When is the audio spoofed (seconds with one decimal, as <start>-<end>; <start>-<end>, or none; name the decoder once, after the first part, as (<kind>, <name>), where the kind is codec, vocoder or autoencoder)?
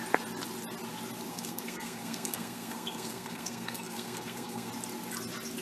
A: 1.3-4.7 (codec, SNAC)